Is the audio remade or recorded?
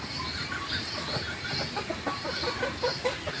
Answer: recorded